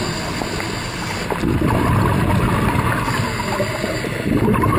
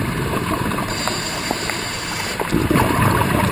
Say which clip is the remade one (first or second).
second